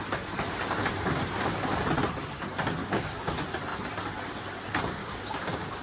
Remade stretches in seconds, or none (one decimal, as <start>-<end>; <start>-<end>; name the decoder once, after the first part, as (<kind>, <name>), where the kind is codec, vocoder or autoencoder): 2.8-3.3 (codec, DAC); 5.0-5.8